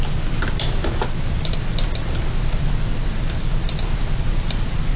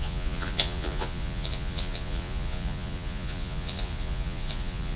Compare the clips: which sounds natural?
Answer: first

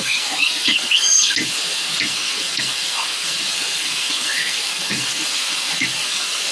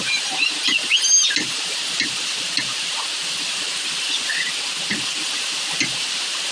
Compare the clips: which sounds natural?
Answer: second